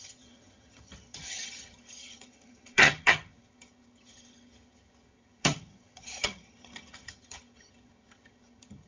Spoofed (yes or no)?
yes